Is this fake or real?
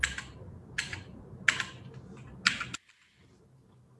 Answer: real